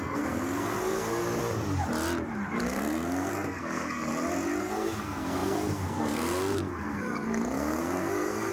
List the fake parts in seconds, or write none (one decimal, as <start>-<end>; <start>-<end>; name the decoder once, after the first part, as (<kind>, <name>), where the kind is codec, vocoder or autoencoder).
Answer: 0.0-1.2 (codec, SNAC); 2.6-4.1; 4.6-8.5